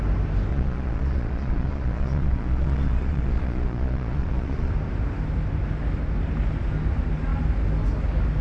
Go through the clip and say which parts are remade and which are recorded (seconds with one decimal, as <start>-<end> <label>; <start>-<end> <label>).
0.0-0.5 recorded; 0.5-4.7 remade; 4.7-8.4 recorded